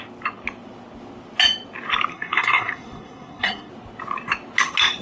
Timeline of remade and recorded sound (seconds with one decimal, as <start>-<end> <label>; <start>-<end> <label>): 0.0-2.1 recorded; 2.1-3.7 remade; 3.7-5.0 recorded